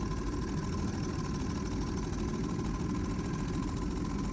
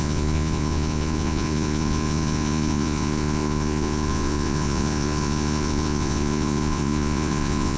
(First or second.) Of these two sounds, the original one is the first